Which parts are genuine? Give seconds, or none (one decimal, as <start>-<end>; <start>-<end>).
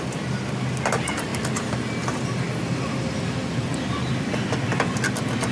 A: 0.0-5.5